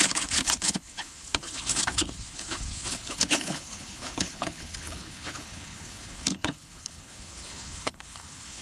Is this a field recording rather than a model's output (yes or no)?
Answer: no